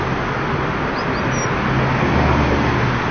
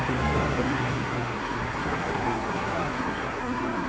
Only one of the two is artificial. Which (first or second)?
second